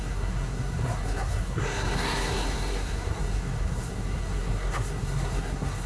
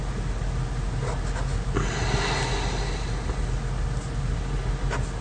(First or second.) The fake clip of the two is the first